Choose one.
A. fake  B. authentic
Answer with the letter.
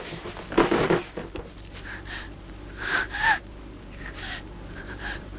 A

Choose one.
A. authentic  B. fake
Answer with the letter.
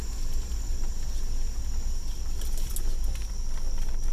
A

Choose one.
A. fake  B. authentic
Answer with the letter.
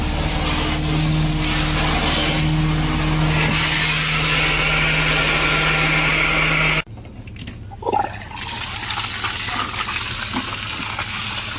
B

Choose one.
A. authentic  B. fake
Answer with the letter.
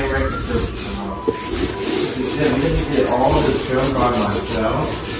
A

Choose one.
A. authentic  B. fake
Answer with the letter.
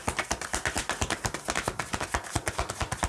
A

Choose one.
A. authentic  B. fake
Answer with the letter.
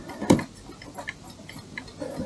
A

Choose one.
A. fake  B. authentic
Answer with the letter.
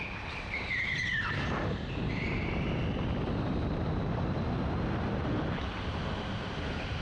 B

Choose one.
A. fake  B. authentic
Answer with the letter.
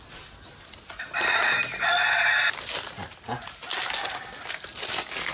B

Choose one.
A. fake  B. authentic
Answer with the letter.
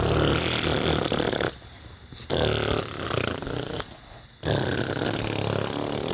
B